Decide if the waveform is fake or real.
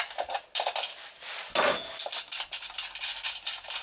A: real